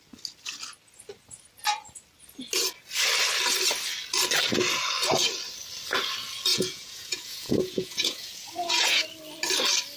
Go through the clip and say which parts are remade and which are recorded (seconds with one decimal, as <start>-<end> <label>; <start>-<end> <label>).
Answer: 0.0-6.5 recorded; 6.5-9.0 remade; 9.0-10.0 recorded